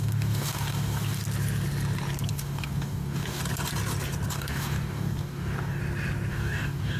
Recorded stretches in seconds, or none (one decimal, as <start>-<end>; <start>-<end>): 1.2-2.3; 3.4-4.3; 5.8-6.3